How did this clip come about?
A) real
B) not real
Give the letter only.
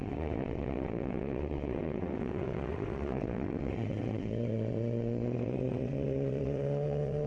B